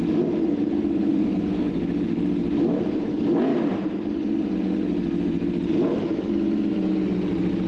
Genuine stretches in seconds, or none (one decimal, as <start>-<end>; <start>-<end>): 0.0-1.1; 1.8-7.7

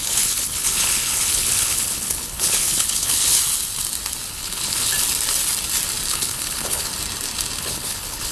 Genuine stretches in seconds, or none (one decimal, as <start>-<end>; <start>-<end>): 3.4-4.3; 4.9-6.1; 6.9-7.6

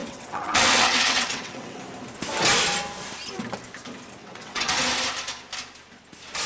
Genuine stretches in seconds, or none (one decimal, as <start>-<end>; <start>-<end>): 1.8-4.2; 4.7-6.5